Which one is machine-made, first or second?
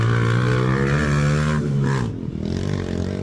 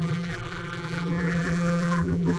second